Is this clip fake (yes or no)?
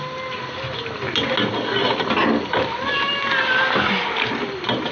no